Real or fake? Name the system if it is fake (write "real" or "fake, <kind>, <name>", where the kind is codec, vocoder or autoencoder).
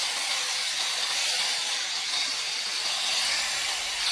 real